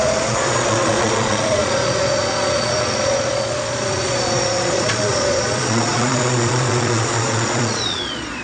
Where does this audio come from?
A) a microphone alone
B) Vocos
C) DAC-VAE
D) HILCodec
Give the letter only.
B